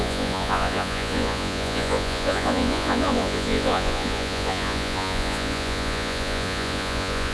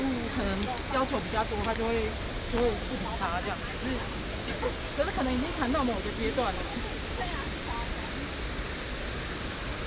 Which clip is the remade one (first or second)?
first